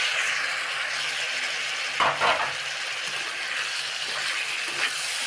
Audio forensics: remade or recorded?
recorded